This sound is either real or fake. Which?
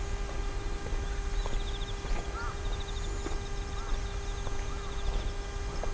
real